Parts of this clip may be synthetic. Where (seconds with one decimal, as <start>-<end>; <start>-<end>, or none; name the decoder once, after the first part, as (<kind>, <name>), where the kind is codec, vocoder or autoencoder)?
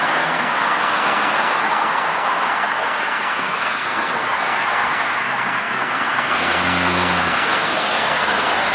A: 0.0-8.7 (codec, SNAC)